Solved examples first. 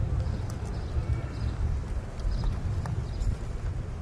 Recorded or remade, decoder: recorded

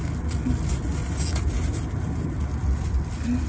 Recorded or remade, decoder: recorded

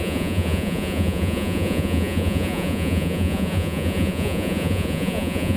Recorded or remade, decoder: remade, vocoder, Vocos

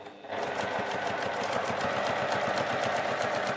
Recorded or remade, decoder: recorded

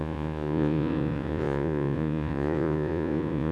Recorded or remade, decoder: remade, vocoder, Vocos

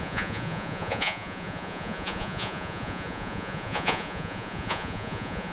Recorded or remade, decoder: remade, vocoder, Vocos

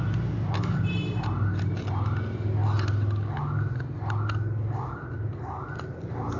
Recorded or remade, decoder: recorded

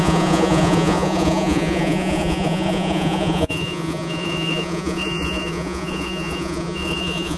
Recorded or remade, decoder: remade, vocoder, Vocos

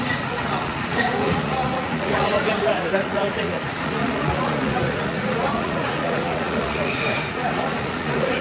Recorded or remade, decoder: remade, vocoder, Vocos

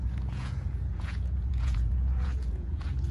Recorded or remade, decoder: remade, vocoder, Vocos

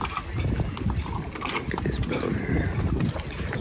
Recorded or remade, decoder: recorded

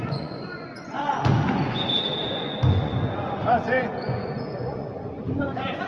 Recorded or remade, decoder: remade, vocoder, Vocos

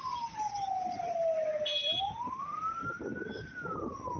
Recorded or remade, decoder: recorded